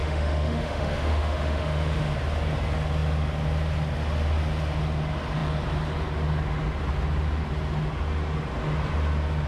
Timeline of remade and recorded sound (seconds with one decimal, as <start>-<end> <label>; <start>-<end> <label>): 0.0-2.1 remade; 2.1-9.5 recorded